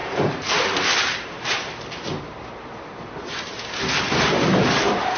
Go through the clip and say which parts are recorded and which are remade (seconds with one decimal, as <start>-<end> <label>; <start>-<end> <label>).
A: 0.0-3.1 remade; 3.1-5.2 recorded